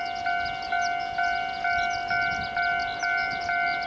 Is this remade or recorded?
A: recorded